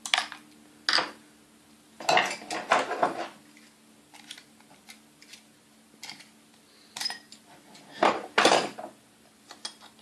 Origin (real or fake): real